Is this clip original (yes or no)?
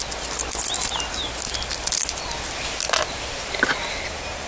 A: yes